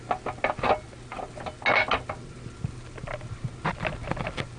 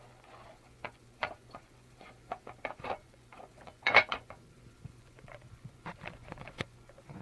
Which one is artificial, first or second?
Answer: second